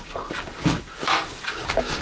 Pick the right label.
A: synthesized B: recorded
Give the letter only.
A